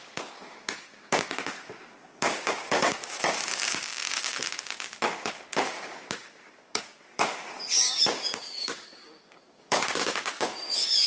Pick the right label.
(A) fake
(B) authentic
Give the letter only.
A